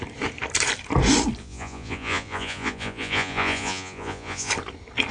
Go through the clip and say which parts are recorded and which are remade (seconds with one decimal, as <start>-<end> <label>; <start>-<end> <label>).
0.0-1.4 recorded; 1.4-4.5 remade; 4.5-5.1 recorded